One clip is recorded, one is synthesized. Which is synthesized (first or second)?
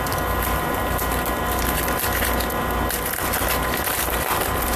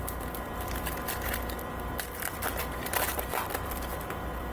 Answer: second